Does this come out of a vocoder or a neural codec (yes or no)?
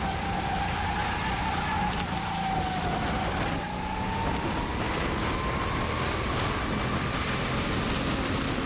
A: no